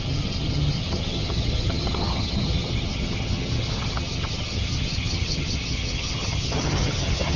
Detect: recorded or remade remade